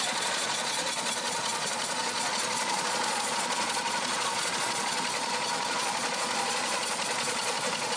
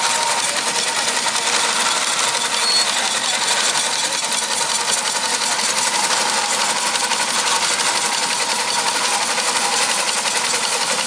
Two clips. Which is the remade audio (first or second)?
first